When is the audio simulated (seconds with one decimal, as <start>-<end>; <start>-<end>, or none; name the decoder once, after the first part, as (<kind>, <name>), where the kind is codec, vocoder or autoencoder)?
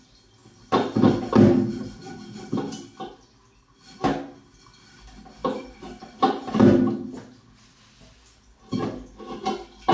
5.4-6.2 (vocoder, BigVGAN v2)